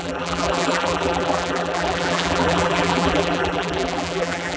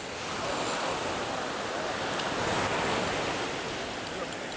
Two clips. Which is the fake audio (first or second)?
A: first